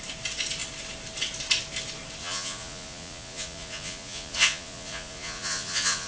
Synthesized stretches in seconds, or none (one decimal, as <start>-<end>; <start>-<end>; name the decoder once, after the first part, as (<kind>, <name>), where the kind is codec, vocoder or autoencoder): 2.2-6.1 (vocoder, Vocos)